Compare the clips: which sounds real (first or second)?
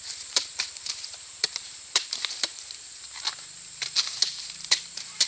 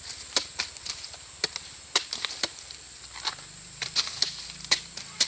second